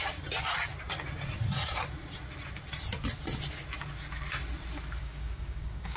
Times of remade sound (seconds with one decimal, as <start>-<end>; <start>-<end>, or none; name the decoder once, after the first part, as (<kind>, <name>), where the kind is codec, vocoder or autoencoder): 5.0-6.0 (codec, DAC)